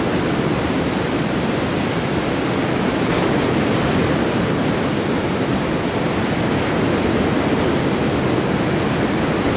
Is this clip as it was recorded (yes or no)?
yes